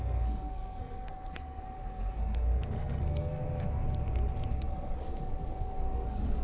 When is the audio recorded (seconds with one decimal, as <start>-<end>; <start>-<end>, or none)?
3.4-4.5